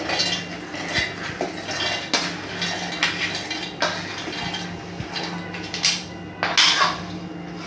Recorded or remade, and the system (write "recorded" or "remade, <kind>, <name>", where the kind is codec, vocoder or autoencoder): recorded